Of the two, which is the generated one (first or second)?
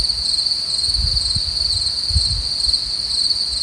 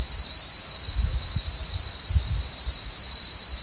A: second